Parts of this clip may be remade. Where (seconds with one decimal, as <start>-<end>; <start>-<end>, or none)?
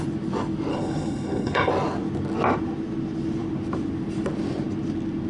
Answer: 0.7-1.7